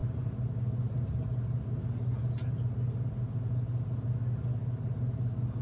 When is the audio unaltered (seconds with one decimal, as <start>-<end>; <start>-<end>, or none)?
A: 0.0-5.6